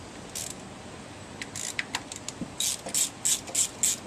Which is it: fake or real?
real